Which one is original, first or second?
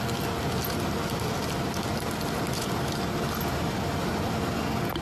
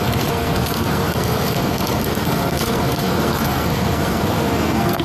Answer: first